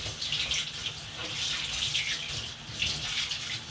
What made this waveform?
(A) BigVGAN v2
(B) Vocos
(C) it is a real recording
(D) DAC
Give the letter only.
C